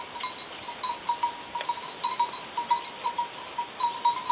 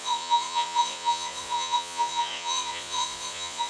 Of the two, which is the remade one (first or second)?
second